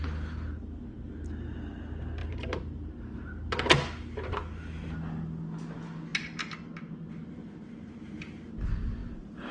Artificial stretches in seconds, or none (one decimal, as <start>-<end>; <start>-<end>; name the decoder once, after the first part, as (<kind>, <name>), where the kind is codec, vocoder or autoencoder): 2.2-3.2 (vocoder, BigVGAN v2); 9.0-9.5